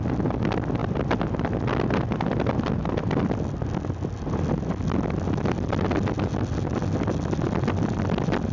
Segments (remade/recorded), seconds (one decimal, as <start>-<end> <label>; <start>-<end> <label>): 0.0-8.5 recorded